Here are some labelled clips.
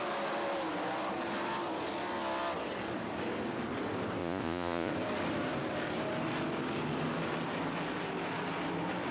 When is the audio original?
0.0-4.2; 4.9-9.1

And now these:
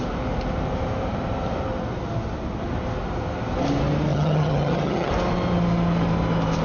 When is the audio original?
0.0-4.1; 5.1-6.6

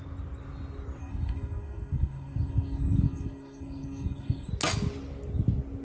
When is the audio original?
0.0-1.0; 4.5-5.8

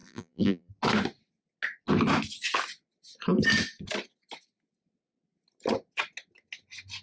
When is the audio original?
0.7-7.0

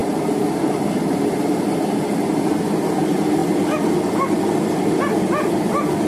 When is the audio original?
0.0-6.1

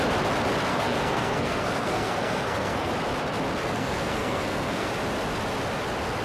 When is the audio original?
0.0-0.7; 2.9-3.6; 4.9-6.2